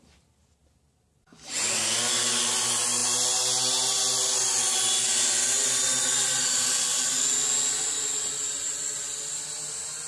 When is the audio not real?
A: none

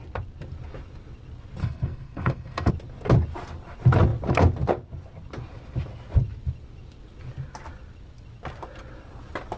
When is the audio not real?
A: 1.6-2.7 (codec, SNAC)

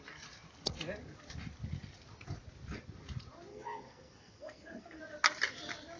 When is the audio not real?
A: 3.5-5.0 (codec, SNAC)

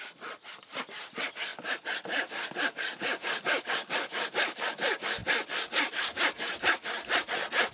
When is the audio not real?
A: none

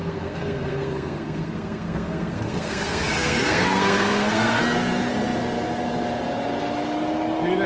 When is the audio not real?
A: 0.0-4.6 (codec, SNAC)

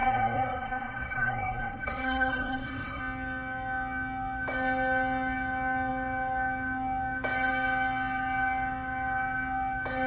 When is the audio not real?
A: 0.0-3.0 (codec, SNAC)

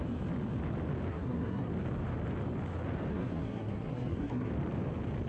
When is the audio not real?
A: 1.1-1.7 (codec, SNAC); 3.1-4.5